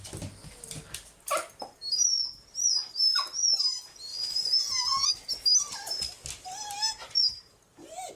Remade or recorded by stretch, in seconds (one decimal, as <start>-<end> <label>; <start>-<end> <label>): 0.0-4.1 recorded; 4.1-5.1 remade; 5.1-8.2 recorded